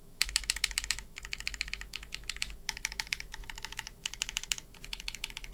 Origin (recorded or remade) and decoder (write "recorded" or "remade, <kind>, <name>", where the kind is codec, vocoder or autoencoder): remade, autoencoder, DAC-VAE